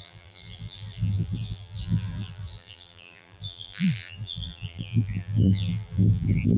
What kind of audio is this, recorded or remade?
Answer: remade